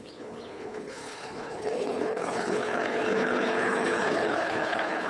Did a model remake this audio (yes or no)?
yes